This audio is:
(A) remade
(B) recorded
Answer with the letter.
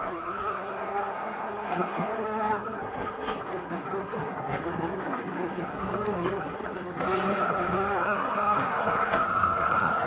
A